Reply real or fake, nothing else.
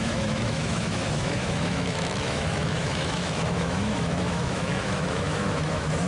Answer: fake